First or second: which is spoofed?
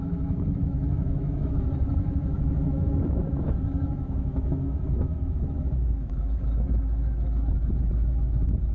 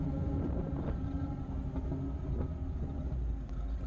first